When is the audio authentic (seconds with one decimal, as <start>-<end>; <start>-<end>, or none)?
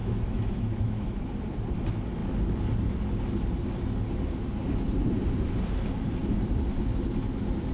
1.2-7.7